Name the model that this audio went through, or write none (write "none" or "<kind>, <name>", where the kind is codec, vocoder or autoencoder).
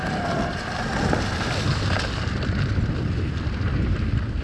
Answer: none